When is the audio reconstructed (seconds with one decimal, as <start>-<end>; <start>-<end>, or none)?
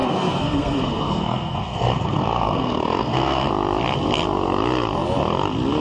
0.0-3.5